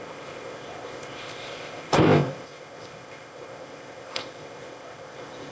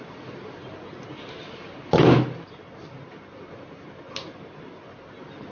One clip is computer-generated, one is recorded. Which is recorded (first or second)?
second